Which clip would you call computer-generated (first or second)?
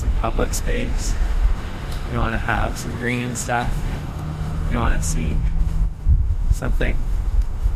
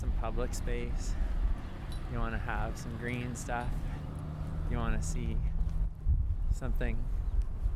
first